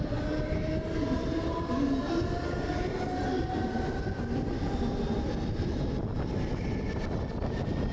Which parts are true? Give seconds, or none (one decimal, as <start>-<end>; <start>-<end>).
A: 0.0-7.9